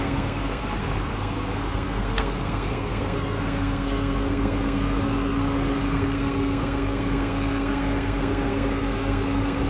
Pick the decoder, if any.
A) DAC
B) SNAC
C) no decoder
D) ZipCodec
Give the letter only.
B